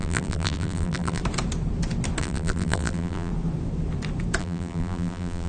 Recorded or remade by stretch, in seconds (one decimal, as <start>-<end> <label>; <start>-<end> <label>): 0.0-1.2 remade; 1.2-2.2 recorded; 2.2-3.3 remade; 3.3-4.4 recorded; 4.4-5.5 remade